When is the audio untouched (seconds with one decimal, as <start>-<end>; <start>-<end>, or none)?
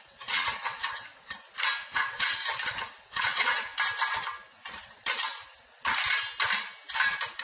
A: 1.1-1.8; 2.4-3.0; 3.7-7.4